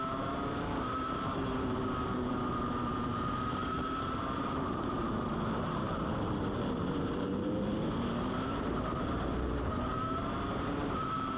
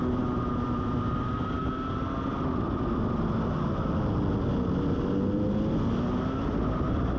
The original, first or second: second